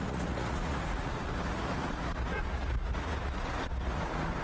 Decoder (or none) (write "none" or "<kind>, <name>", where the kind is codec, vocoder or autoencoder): vocoder, Vocos